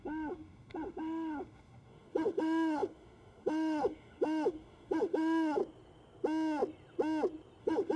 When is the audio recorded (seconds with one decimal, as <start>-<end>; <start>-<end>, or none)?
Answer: 5.6-7.6